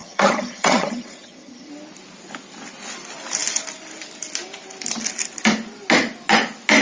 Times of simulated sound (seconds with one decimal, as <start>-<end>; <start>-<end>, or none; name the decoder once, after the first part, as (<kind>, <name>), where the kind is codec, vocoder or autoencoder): 0.0-1.7 (vocoder, HiFi-GAN)